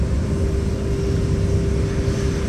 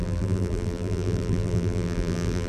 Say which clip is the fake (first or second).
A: second